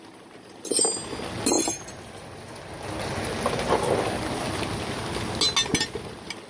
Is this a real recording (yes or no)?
yes